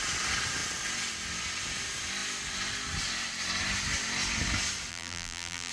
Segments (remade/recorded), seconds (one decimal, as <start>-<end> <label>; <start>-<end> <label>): 0.0-4.9 recorded; 4.9-5.7 remade